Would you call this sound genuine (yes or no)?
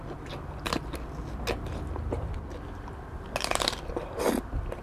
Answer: yes